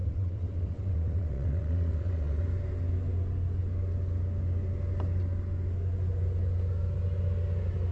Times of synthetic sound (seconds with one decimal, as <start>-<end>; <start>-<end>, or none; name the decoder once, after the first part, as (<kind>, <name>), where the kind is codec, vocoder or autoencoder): 0.0-2.4 (vocoder, WaveNeXt)